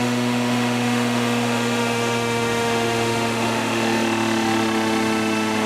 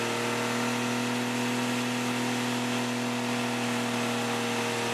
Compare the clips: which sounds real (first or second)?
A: second